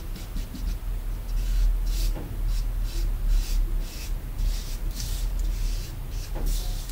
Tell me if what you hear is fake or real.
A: real